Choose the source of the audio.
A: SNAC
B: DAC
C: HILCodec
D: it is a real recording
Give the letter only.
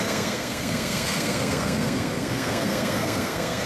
A